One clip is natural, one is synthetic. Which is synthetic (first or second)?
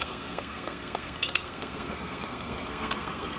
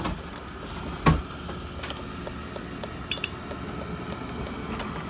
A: first